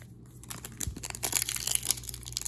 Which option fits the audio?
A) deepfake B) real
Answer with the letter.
B